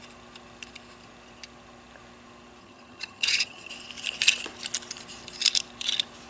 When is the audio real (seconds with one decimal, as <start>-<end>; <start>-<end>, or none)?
0.0-2.6; 3.7-6.3